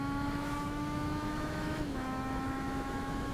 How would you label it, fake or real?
fake